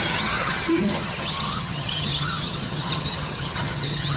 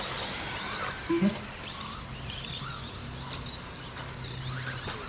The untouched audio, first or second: second